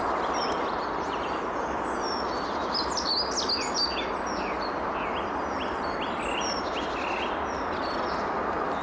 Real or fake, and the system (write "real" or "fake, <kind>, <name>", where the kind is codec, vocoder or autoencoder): real